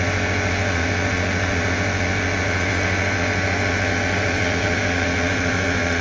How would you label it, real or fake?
fake